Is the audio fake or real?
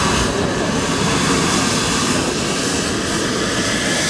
real